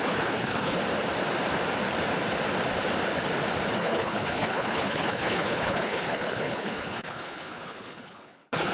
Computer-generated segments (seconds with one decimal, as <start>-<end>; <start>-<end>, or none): 0.0-0.8; 3.8-8.7